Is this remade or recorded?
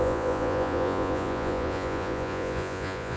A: remade